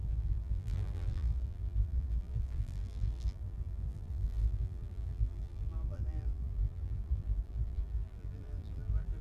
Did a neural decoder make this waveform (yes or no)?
yes